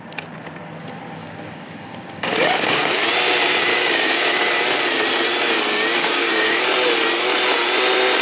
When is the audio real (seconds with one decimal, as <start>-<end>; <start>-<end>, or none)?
0.0-1.2; 2.8-3.7; 4.5-6.0; 6.6-8.2